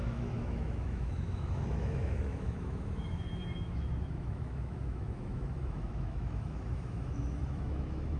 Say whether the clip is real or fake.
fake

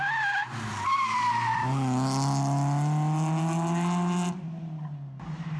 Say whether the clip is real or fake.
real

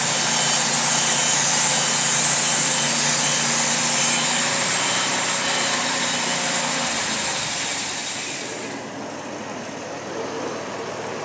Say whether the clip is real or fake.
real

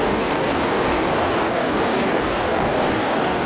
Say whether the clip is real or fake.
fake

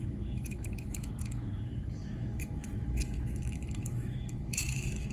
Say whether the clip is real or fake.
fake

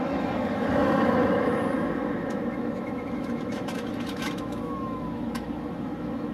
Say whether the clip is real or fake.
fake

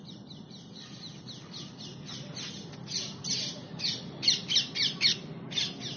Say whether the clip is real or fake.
real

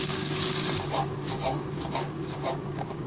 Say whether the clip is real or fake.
fake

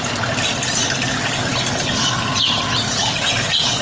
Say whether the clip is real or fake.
real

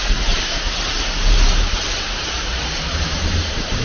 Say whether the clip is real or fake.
fake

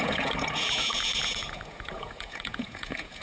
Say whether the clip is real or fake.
fake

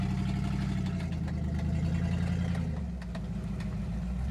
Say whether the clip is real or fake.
real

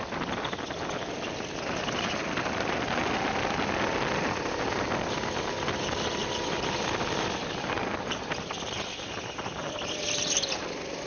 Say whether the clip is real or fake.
real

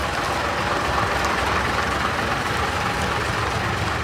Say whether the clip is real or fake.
real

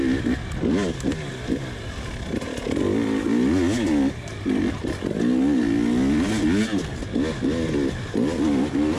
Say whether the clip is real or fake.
real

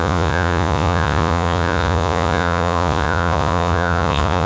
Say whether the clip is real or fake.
fake